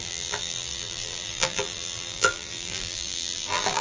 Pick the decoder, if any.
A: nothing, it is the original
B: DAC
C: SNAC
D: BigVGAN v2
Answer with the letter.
D